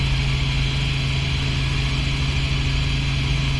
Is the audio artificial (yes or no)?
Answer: no